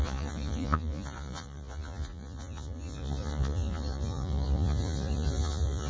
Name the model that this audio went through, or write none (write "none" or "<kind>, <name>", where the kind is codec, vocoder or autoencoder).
vocoder, Vocos